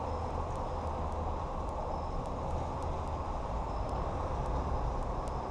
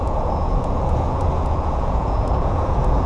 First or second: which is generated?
second